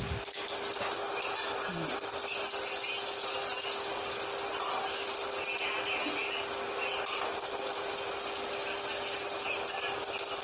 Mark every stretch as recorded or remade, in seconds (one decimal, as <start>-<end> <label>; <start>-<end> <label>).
0.0-6.2 recorded; 6.2-7.2 remade; 7.2-10.4 recorded